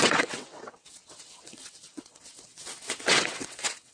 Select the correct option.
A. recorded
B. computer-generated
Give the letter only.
B